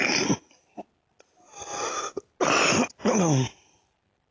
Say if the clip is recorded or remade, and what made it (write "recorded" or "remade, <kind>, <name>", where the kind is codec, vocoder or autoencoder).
recorded